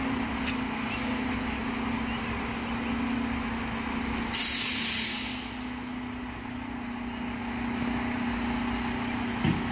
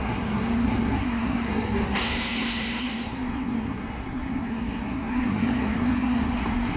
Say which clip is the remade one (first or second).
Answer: second